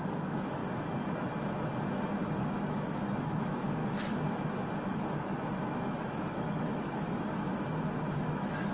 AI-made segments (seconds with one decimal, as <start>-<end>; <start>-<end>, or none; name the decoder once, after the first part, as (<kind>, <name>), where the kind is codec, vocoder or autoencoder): 0.0-0.6 (autoencoder, DAC-VAE); 2.2-3.8; 4.9-8.7